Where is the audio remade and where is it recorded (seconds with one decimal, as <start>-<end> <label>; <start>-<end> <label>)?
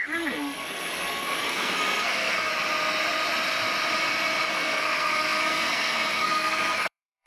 0.0-2.5 remade; 2.5-4.5 recorded; 4.5-7.3 remade